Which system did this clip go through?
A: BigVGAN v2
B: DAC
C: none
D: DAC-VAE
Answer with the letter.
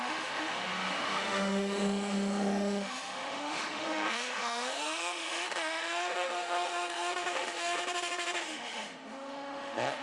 D